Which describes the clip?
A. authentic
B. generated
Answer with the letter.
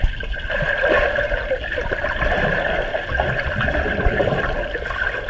A